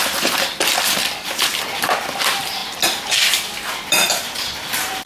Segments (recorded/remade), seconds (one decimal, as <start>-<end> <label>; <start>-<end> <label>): 0.0-2.6 remade; 2.6-3.9 recorded; 3.9-5.1 remade